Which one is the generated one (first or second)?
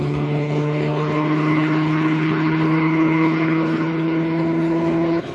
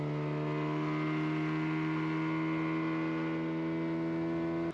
first